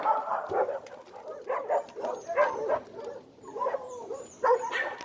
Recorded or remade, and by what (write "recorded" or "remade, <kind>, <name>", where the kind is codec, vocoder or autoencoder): recorded